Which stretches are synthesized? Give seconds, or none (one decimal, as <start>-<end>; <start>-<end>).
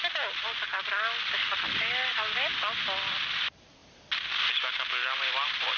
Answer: none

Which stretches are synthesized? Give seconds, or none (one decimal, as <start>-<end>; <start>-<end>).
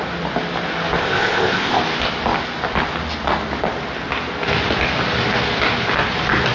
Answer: 1.0-1.8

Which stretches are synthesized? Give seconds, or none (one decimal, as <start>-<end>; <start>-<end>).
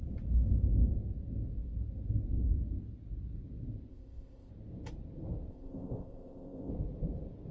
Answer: 3.9-4.5; 5.5-6.7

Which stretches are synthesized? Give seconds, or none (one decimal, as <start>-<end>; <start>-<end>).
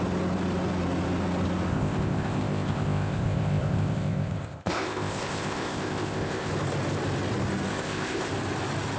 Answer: 1.7-6.5; 7.7-8.3